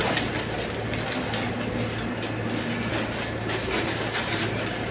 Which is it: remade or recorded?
recorded